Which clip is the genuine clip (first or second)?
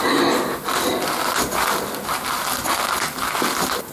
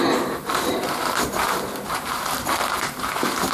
first